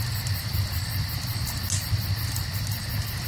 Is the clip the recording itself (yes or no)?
yes